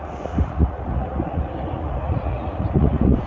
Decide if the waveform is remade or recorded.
remade